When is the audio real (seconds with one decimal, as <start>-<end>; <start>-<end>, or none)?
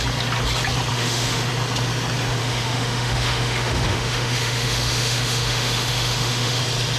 0.0-0.9; 1.5-2.4; 6.6-7.0